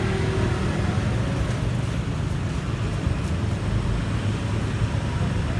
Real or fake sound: real